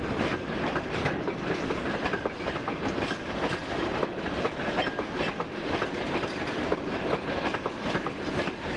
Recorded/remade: recorded